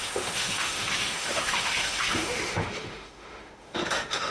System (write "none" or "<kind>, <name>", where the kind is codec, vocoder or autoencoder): autoencoder, DAC-VAE